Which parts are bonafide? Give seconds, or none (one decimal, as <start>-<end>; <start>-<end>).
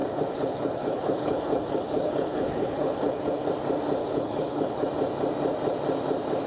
3.5-4.0; 4.9-6.5